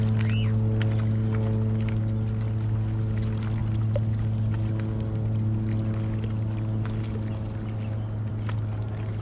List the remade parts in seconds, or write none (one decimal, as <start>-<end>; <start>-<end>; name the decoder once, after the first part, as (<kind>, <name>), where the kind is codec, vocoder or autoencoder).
none